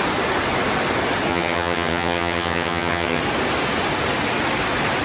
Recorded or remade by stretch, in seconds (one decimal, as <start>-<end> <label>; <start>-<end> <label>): 0.0-1.3 recorded; 1.3-3.2 remade; 3.2-5.0 recorded